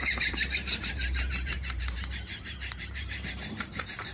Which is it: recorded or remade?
remade